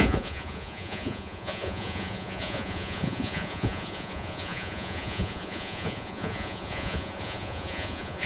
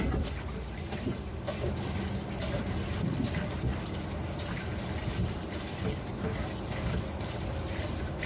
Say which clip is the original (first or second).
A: second